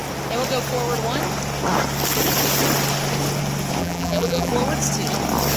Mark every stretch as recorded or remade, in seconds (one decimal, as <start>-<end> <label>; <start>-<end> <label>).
0.0-3.8 recorded; 3.8-4.5 remade; 4.5-5.6 recorded